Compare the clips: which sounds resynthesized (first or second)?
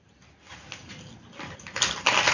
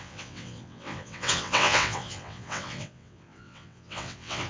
second